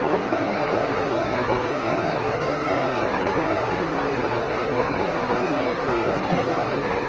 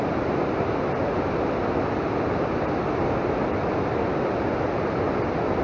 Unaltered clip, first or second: second